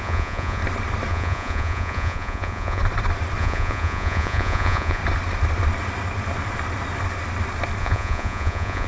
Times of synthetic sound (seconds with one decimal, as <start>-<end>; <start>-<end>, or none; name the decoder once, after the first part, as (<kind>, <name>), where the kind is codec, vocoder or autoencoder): 0.0-0.6 (vocoder, Vocos); 1.1-2.8; 3.4-5.0; 7.8-8.9